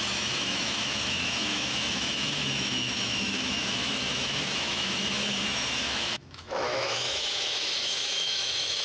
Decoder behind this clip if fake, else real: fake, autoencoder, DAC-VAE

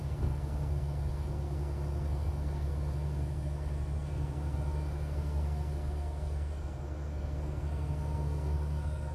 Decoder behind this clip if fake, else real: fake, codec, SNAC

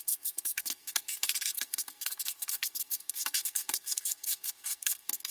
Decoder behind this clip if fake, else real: fake, codec, SNAC